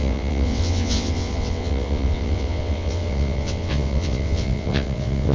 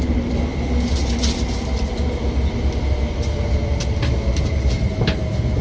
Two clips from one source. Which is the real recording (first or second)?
second